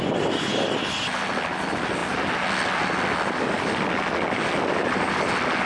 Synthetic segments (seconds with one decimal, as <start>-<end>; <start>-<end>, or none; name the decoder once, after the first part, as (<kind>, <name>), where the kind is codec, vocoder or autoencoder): none